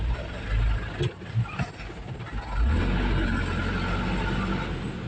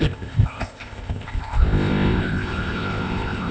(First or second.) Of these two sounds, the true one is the first